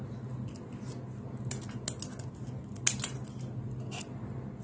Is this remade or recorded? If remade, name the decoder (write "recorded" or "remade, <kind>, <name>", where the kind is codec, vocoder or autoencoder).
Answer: recorded